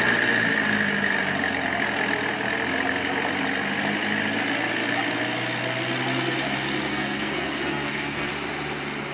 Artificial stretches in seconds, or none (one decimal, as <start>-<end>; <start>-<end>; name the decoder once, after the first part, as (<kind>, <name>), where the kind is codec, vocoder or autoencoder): 6.9-8.3 (codec, SNAC)